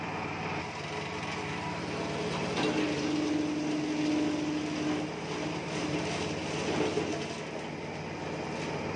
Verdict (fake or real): real